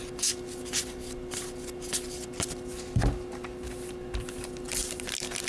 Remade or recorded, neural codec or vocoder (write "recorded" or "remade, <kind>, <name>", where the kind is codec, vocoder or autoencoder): recorded